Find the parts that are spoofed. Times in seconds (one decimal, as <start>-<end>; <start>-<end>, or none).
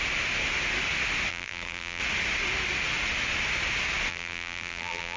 1.3-2.0; 4.1-5.2